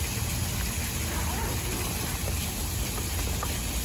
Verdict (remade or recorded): recorded